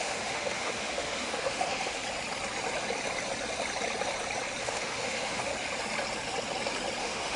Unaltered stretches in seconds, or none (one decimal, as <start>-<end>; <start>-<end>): 2.0-4.6; 5.5-7.0